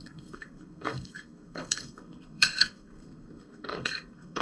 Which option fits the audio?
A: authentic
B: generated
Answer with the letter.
B